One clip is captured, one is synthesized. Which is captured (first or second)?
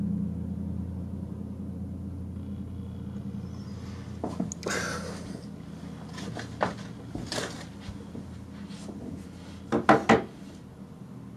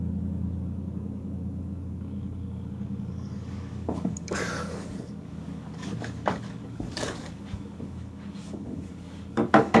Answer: first